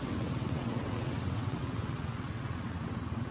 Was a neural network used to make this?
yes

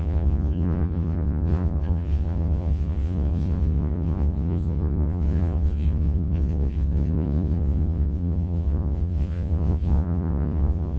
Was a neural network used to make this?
yes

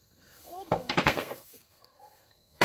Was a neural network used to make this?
yes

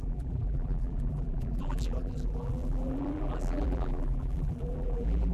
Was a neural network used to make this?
yes